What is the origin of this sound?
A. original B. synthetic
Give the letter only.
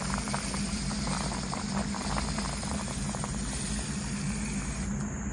A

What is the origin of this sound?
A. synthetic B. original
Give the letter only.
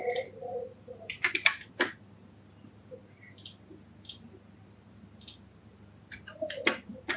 B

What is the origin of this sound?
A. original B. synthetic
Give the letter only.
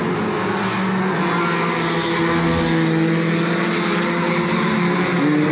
A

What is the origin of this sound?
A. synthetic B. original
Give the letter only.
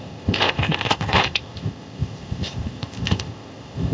A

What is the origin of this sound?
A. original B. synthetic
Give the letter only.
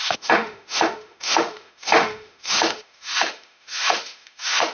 B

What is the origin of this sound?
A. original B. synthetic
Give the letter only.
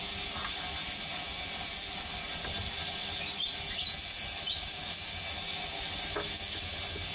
A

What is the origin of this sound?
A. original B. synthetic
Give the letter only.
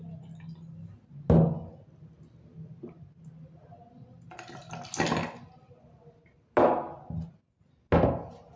A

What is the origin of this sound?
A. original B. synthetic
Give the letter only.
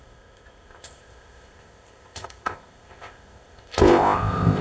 B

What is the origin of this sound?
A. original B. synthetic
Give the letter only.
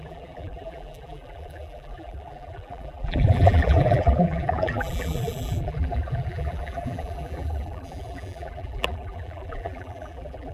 B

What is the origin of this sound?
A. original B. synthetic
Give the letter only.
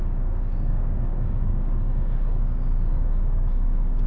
B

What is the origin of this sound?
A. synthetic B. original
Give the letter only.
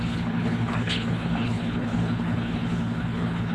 A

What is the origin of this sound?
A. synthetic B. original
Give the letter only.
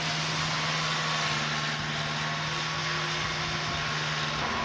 B